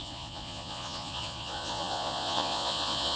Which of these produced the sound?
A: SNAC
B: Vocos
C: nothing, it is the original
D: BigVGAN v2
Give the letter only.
B